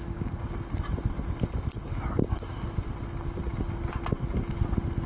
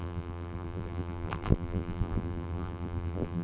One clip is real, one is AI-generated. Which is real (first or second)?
first